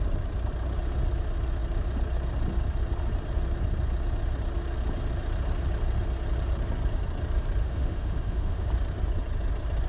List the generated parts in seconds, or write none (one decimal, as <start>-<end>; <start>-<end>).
7.6-8.7